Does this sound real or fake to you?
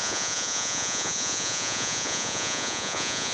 fake